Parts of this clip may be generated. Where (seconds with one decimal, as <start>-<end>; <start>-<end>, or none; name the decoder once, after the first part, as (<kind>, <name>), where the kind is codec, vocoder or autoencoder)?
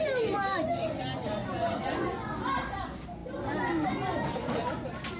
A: 1.4-2.3 (vocoder, Vocos)